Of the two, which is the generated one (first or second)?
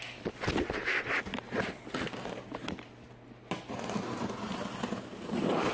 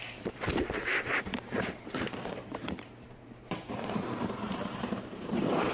second